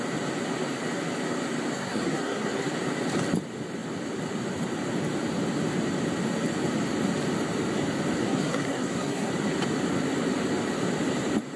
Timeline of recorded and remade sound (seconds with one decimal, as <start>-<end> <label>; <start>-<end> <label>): 0.0-1.7 recorded; 1.7-2.7 remade; 2.7-8.2 recorded; 8.2-9.3 remade; 9.3-11.6 recorded